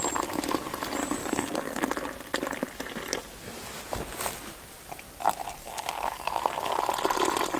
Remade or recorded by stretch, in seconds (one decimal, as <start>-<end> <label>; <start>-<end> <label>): 0.0-1.2 recorded; 1.2-1.8 remade; 1.8-5.6 recorded; 5.6-6.8 remade; 6.8-7.6 recorded